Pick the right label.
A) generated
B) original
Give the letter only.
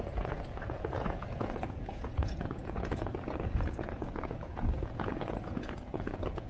A